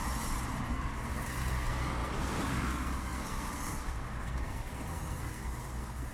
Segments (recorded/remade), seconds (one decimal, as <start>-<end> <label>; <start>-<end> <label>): 0.0-0.7 recorded; 0.7-6.1 remade